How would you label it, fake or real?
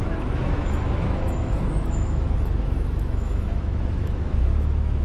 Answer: fake